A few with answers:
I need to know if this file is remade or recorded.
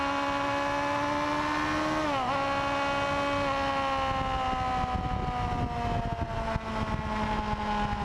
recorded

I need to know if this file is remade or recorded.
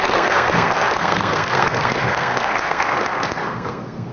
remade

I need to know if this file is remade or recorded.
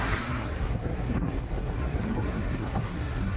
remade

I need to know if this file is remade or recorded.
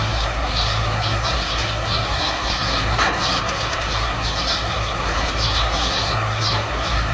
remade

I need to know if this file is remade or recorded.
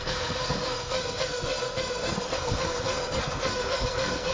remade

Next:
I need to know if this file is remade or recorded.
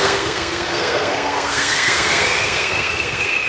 remade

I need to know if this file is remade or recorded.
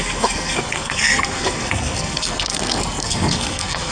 remade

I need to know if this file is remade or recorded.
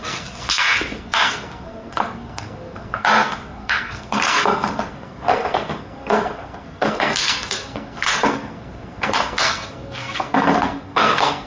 remade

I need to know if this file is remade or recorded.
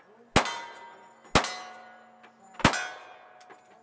recorded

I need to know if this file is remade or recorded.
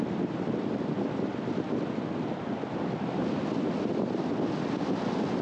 recorded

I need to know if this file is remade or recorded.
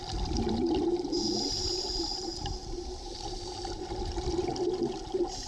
recorded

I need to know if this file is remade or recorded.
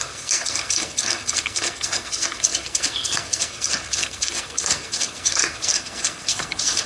remade